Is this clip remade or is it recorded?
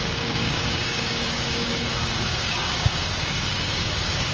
remade